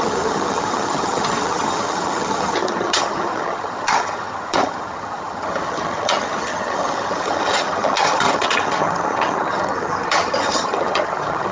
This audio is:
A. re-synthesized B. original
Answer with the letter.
A